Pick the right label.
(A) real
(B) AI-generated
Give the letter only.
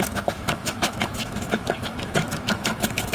B